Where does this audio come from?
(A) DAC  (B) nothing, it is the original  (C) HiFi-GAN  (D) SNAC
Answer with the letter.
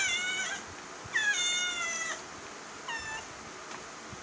B